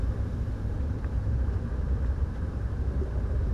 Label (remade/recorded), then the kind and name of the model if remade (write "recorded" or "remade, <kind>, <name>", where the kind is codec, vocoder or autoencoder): remade, vocoder, BigVGAN v2